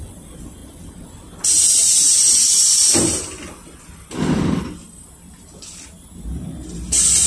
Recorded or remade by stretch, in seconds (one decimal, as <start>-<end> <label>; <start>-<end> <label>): 0.0-7.3 recorded